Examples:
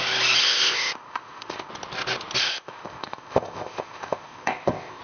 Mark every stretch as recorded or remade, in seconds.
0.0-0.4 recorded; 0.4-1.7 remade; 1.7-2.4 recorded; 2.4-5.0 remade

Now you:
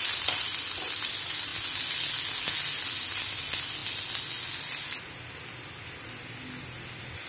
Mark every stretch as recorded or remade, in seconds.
0.0-7.3 recorded

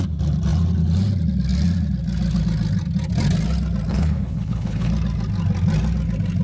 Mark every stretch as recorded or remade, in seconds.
0.0-3.9 recorded; 3.9-4.9 remade; 4.9-6.4 recorded

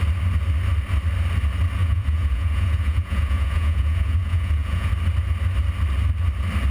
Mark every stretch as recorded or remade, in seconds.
0.0-1.8 recorded; 1.8-4.9 remade; 4.9-6.7 recorded

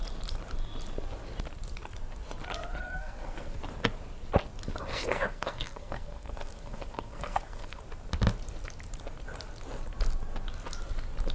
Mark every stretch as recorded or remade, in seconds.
0.0-2.7 recorded; 2.7-3.6 remade; 3.6-4.9 recorded; 4.9-7.8 remade; 7.8-11.3 recorded